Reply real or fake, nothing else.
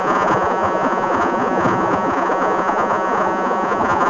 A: fake